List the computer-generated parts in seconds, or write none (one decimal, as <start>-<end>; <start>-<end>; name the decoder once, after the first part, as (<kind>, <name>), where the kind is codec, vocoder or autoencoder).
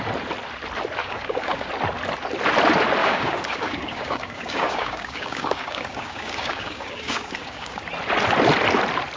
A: 1.0-1.7 (codec, DAC); 3.0-7.8